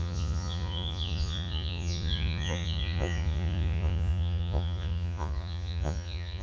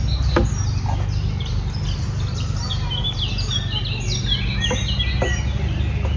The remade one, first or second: first